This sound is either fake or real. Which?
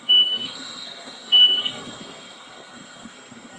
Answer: fake